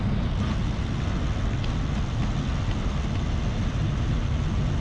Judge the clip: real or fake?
real